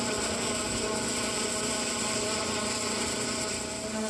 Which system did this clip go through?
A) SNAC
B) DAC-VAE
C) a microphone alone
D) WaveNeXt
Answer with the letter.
C